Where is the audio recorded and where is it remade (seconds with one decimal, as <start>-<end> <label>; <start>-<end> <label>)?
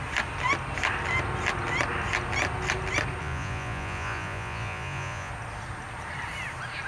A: 0.0-3.2 recorded; 3.2-5.3 remade; 5.3-6.9 recorded